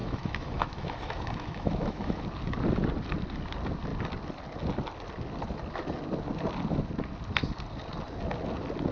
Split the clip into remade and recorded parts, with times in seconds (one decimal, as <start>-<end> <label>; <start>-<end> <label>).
0.0-2.2 remade; 2.2-8.9 recorded